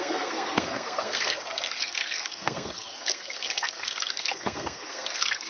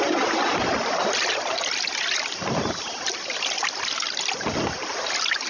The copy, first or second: first